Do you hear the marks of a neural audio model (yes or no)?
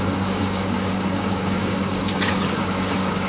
yes